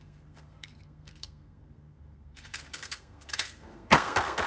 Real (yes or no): no